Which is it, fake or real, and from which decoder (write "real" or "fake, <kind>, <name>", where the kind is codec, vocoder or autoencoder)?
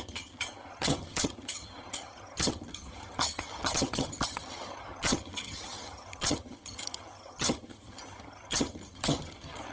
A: fake, vocoder, HiFi-GAN